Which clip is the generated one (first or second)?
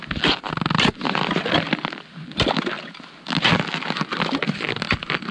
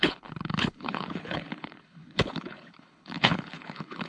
second